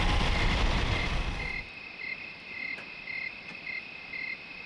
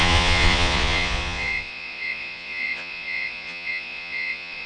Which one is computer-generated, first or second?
second